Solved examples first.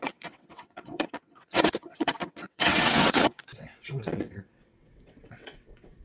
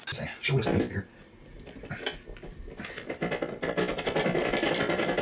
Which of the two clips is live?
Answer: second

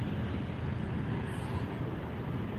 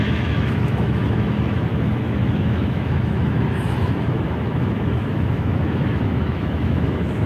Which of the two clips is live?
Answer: first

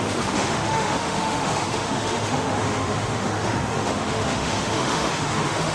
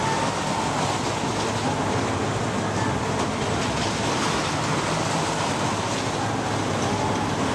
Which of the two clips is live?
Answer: second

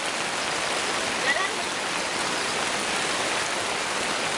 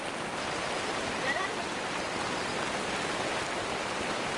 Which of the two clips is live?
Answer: first